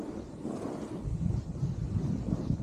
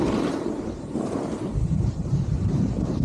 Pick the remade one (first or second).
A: second